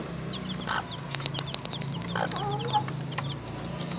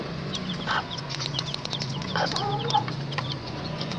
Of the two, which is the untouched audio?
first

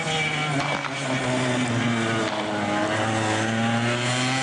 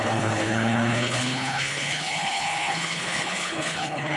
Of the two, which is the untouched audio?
first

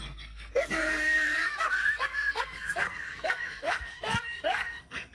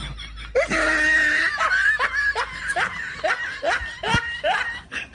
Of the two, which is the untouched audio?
second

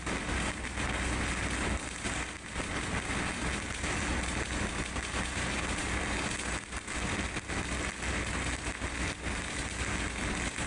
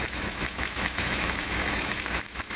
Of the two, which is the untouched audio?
first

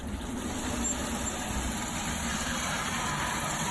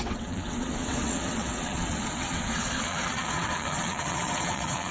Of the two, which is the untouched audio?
first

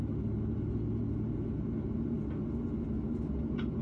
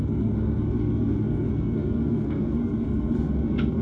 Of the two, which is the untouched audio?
first